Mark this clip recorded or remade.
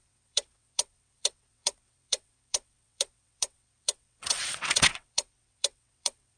remade